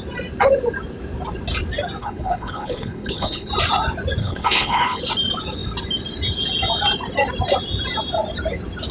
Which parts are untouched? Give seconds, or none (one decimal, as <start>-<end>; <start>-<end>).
0.0-2.0; 3.5-4.2; 5.0-8.9